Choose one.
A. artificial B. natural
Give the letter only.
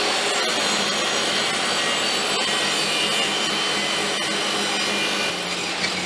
B